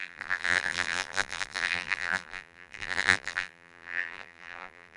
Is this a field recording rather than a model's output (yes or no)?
no